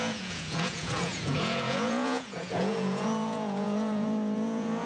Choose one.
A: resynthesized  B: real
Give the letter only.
A